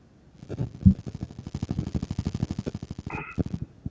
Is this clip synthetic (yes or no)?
no